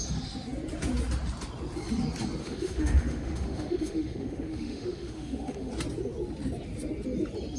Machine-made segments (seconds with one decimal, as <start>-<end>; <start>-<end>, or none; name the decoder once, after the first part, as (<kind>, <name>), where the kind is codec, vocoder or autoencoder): 2.4-5.7 (autoencoder, DAC-VAE)